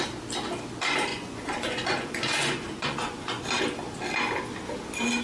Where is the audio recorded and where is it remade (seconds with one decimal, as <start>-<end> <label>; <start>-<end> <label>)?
0.0-1.1 recorded; 1.1-3.4 remade; 3.4-5.2 recorded